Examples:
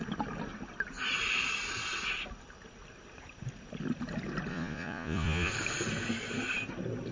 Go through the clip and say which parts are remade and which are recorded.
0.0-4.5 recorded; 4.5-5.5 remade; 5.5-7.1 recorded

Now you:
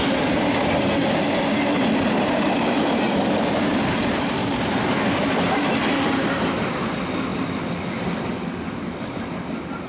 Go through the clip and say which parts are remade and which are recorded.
0.0-9.9 recorded

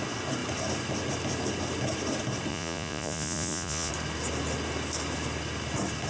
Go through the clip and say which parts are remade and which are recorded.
0.0-2.5 recorded; 2.5-3.9 remade; 3.9-6.1 recorded

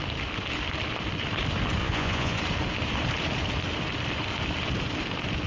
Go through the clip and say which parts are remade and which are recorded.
0.0-1.8 recorded; 1.8-2.4 remade; 2.4-5.5 recorded

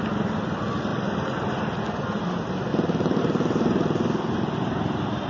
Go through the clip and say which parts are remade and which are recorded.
0.0-5.3 recorded

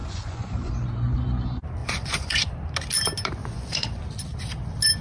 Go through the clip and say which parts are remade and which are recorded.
0.0-0.7 remade; 0.7-1.8 recorded; 1.8-2.5 remade; 2.5-3.4 recorded; 3.4-4.0 remade; 4.0-5.0 recorded

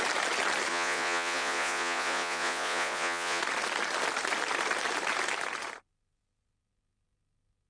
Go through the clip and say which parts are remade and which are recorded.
0.0-0.7 recorded; 0.7-3.4 remade; 3.4-7.7 recorded

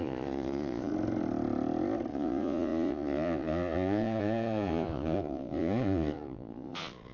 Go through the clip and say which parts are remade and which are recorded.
0.0-0.9 remade; 0.9-2.1 recorded; 2.1-7.1 remade